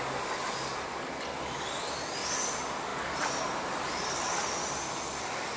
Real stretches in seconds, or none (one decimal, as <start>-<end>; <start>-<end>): 0.0-5.6